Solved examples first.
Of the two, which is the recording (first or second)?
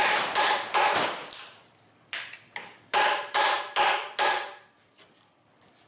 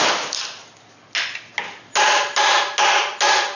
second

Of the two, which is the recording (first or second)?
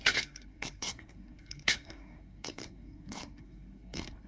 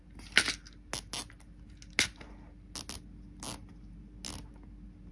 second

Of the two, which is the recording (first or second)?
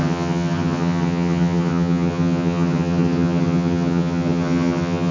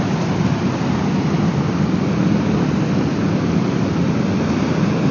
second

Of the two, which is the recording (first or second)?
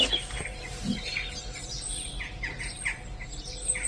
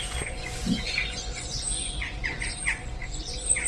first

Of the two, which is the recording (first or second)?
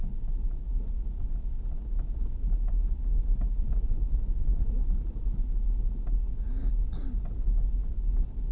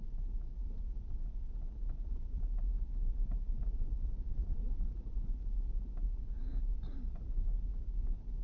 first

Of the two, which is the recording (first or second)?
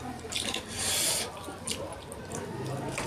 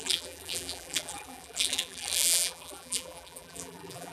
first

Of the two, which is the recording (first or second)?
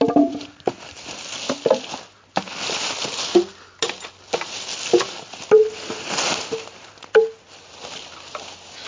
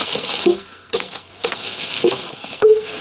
first